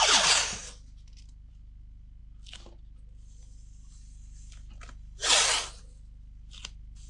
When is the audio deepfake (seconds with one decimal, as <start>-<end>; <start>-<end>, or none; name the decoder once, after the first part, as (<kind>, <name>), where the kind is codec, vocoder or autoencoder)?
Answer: none